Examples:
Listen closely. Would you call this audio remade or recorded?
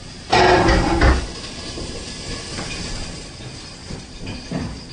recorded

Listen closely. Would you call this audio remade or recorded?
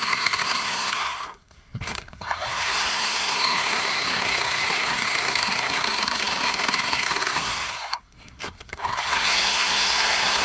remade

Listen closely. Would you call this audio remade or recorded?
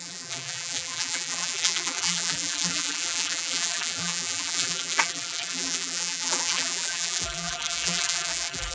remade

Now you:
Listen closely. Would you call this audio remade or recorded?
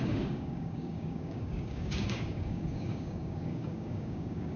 remade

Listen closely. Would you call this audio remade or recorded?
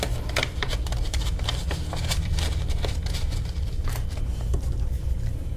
remade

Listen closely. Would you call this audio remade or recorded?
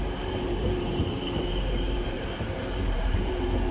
remade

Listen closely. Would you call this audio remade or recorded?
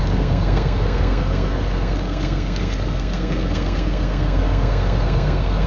remade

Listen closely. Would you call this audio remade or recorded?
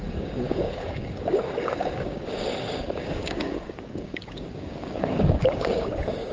remade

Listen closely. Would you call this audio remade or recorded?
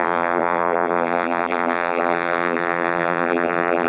remade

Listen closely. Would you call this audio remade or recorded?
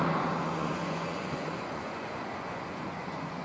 remade